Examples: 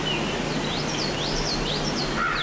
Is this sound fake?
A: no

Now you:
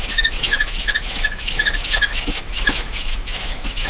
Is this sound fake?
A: yes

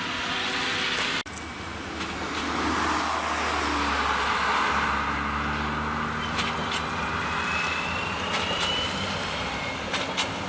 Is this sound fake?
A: no